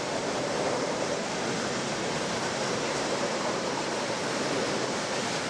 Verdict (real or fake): fake